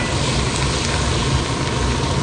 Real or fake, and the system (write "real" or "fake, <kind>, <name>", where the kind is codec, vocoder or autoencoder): real